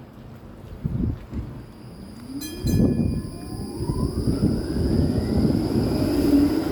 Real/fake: real